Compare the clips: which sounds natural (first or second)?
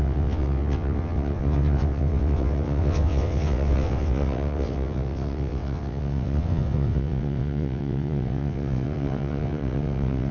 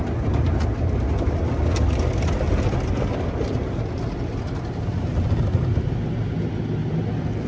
second